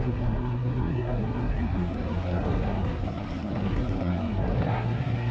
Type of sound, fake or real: fake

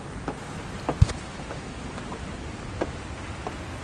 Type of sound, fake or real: real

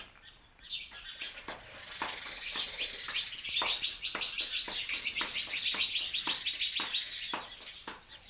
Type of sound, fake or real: real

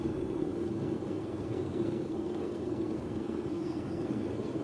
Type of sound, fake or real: fake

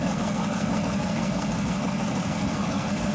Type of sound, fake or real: fake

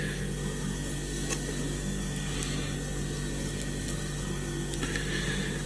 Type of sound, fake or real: real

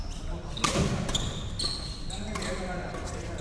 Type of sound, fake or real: real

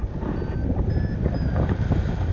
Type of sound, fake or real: real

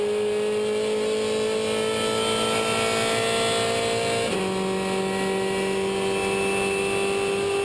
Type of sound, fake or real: real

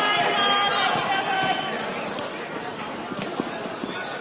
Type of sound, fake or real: real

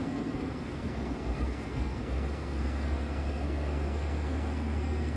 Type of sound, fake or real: fake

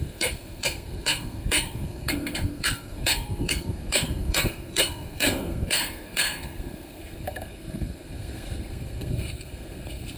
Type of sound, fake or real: fake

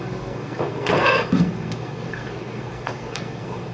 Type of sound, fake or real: fake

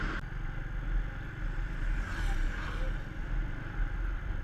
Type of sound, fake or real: real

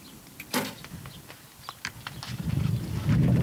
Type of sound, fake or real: real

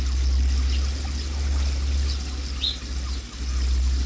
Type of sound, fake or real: real